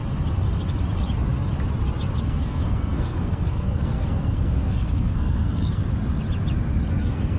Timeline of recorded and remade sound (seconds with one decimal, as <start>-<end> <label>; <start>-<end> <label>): 0.0-2.2 recorded; 2.2-5.8 remade; 5.8-6.9 recorded; 6.9-7.4 remade